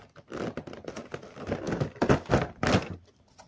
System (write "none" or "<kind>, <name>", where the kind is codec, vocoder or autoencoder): none